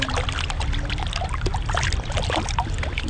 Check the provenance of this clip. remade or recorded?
remade